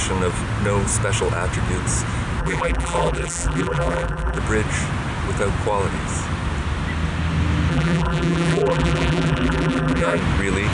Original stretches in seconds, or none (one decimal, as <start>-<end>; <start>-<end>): 0.0-2.4; 4.4-7.7; 10.2-10.7